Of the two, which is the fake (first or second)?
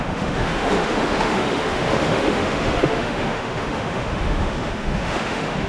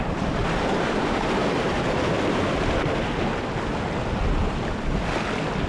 first